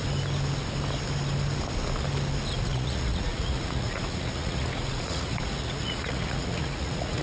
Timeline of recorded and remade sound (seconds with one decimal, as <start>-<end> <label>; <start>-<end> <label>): 0.0-2.6 recorded; 2.6-7.2 remade